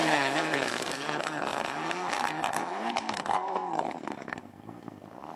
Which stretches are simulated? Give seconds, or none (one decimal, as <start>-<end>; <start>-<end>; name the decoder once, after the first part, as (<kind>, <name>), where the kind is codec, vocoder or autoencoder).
0.0-5.4 (codec, SNAC)